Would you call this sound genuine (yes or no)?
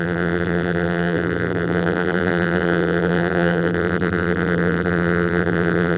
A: no